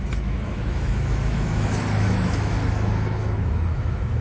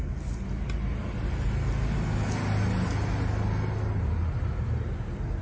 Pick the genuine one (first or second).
second